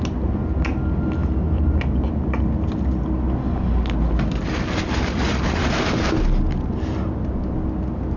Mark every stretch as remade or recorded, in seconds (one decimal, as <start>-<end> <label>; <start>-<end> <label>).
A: 0.0-8.2 recorded